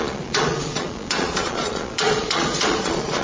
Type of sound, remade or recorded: remade